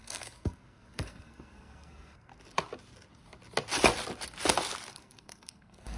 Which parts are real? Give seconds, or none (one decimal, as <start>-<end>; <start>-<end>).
2.3-4.9